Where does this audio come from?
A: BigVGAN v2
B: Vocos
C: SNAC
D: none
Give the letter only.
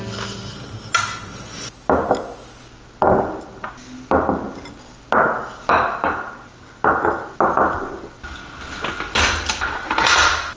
D